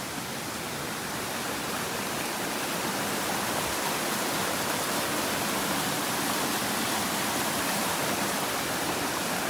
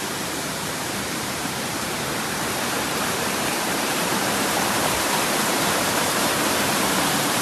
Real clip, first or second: first